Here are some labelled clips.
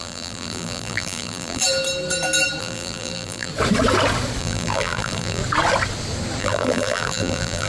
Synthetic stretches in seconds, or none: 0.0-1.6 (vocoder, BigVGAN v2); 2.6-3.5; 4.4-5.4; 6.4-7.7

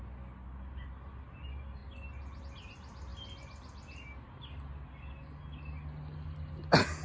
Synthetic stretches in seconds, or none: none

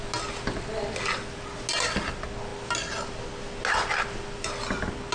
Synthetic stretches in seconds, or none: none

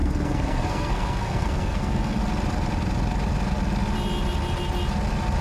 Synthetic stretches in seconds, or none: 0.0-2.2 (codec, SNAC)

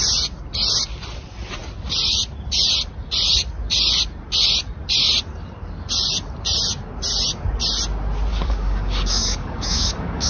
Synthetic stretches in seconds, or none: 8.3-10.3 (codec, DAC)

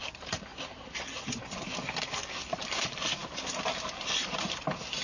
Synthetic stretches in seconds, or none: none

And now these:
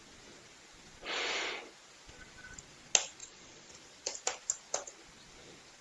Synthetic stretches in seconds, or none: 3.2-3.7 (vocoder, WaveNeXt)